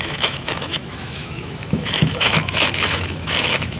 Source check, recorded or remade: remade